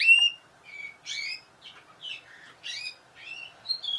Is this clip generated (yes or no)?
no